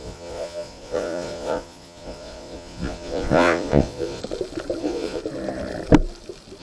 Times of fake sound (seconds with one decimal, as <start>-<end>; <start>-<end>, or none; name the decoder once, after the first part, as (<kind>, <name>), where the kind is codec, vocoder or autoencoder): 0.0-4.2 (vocoder, Vocos); 4.8-5.2

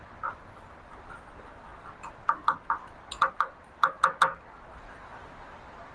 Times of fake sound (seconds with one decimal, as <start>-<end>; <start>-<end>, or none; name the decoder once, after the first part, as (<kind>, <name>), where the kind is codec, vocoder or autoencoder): none